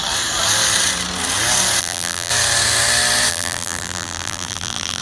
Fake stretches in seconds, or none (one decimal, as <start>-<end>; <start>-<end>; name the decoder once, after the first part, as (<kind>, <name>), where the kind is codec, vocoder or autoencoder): 1.8-2.3 (vocoder, BigVGAN v2); 3.3-5.0